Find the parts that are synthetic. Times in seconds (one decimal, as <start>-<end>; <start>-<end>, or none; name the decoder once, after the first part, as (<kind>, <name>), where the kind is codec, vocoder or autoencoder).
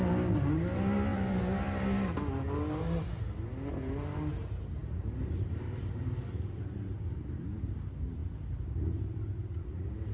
4.8-7.8 (vocoder, BigVGAN v2)